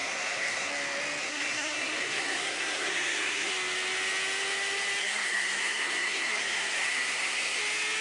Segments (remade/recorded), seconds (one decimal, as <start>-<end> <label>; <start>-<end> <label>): 0.0-0.7 remade; 0.7-1.2 recorded; 1.2-3.5 remade; 3.5-5.0 recorded; 5.0-7.6 remade; 7.6-8.0 recorded